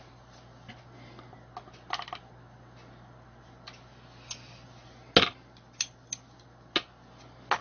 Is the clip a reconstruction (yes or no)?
no